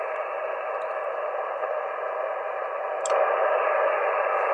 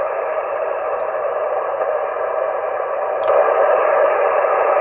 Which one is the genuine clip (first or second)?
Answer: first